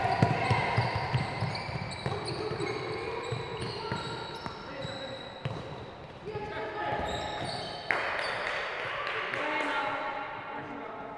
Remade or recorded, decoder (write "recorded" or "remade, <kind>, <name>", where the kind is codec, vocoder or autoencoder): recorded